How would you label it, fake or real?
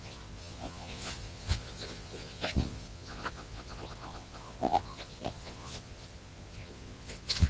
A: fake